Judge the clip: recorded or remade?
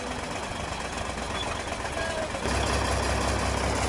recorded